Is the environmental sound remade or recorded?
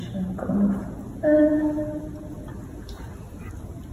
recorded